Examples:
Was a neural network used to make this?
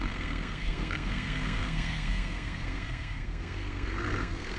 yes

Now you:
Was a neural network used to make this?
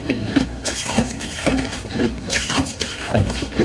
yes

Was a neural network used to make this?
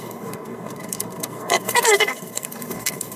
yes